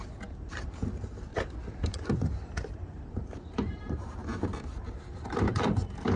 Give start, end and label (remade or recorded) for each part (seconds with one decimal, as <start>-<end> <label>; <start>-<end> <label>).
0.0-1.3 remade; 1.3-2.7 recorded; 2.7-6.2 remade